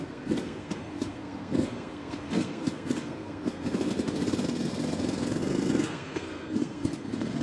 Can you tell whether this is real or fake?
fake